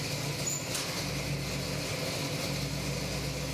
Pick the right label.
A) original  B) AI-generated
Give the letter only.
A